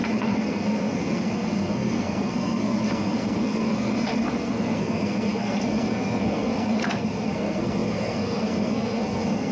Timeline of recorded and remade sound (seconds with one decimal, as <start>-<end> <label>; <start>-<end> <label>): 0.0-9.5 remade